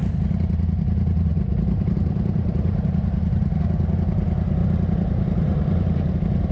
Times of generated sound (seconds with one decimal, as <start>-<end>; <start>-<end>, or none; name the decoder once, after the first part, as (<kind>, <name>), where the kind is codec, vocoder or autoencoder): 0.0-0.8 (vocoder, BigVGAN v2); 1.3-3.6; 4.6-6.1